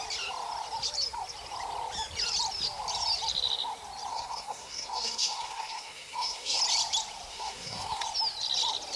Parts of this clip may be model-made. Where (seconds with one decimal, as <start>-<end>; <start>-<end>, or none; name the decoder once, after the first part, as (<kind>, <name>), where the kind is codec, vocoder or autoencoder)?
4.1-6.6 (codec, SNAC); 7.3-8.0